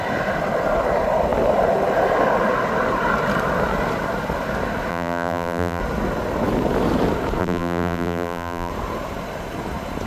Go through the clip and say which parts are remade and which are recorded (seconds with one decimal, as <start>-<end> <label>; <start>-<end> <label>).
0.0-4.9 recorded; 4.9-5.8 remade; 5.8-7.4 recorded; 7.4-8.7 remade; 8.7-10.1 recorded